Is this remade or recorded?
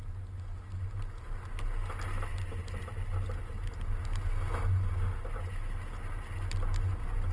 recorded